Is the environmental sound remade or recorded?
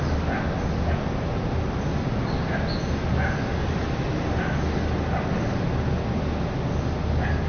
recorded